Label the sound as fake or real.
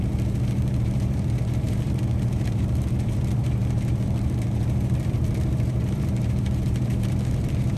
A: fake